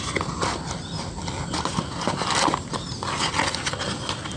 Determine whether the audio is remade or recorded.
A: recorded